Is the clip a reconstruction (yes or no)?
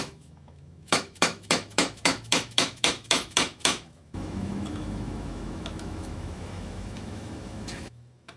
yes